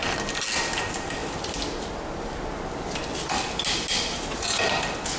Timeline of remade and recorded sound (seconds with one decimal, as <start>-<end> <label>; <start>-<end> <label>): 0.0-5.2 recorded